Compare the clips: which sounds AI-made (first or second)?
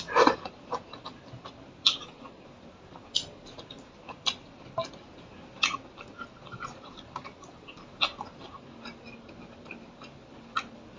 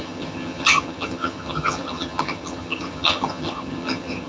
second